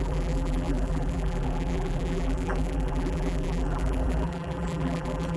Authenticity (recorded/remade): remade